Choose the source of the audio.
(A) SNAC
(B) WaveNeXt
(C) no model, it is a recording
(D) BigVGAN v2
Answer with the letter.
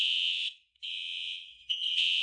B